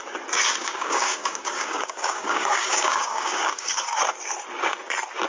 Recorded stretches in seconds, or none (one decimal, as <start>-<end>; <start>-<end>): 0.0-0.6; 3.8-5.3